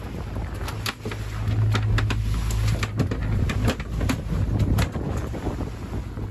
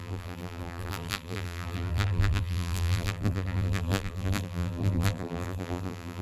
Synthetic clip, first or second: second